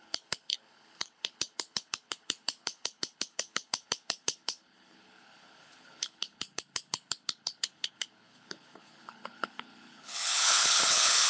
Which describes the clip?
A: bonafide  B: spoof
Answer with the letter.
B